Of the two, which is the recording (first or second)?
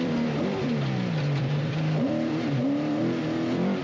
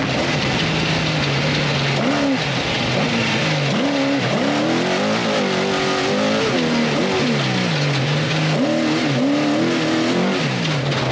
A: second